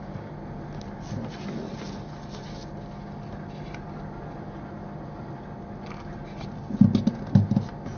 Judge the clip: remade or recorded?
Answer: recorded